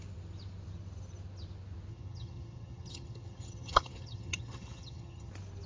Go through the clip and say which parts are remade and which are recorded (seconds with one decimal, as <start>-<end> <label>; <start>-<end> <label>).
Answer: 0.0-1.9 recorded; 1.9-5.3 remade; 5.3-5.7 recorded